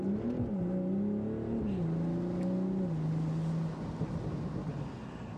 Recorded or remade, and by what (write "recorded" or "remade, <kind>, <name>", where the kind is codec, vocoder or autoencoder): recorded